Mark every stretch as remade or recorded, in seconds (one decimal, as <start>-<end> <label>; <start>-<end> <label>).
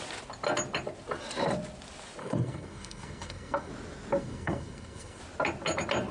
0.0-2.2 recorded; 2.2-3.7 remade; 3.7-4.2 recorded; 4.2-5.2 remade; 5.2-6.1 recorded